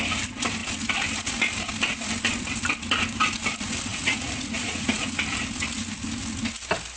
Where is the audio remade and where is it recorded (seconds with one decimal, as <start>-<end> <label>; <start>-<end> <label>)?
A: 0.0-3.9 recorded; 3.9-5.2 remade; 5.2-7.0 recorded